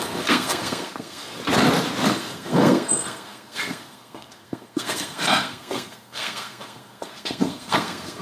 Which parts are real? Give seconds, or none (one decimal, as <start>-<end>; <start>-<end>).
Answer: 1.4-2.1